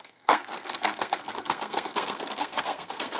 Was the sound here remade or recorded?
remade